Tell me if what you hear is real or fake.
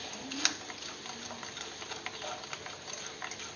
real